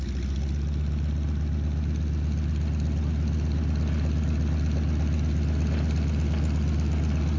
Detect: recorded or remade recorded